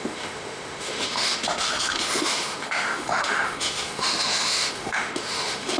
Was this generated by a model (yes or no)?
yes